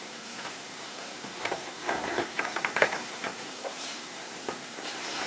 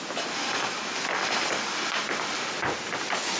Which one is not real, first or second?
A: first